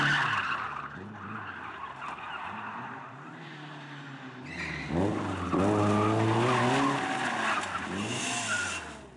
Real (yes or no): yes